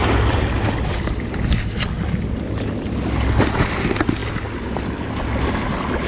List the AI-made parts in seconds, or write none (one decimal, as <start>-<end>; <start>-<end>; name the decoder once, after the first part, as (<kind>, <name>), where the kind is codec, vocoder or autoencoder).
none